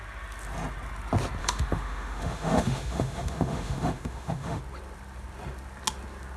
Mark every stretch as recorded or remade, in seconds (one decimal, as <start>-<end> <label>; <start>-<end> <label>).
0.0-1.4 recorded; 1.4-4.6 remade; 4.6-6.4 recorded